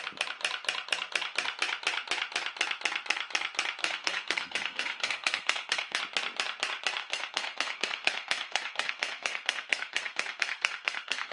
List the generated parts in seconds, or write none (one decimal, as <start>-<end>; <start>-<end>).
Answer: 3.8-6.0; 7.0-11.3